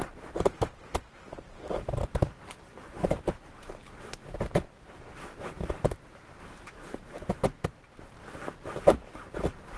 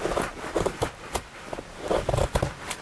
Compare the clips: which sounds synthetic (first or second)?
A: first